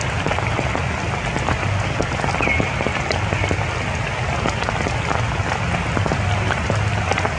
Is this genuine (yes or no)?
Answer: yes